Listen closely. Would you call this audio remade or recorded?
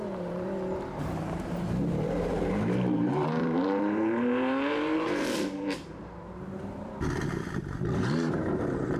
remade